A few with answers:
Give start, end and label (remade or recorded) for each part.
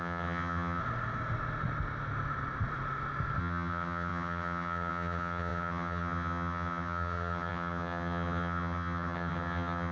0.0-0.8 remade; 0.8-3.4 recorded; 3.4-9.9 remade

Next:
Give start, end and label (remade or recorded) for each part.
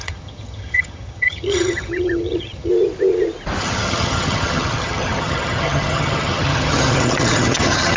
0.0-2.7 remade; 2.7-3.6 recorded; 3.6-8.0 remade